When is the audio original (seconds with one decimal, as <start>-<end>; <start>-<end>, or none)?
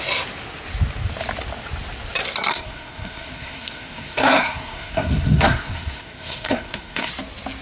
0.0-2.5; 7.1-7.6